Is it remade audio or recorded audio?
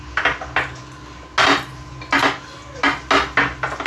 recorded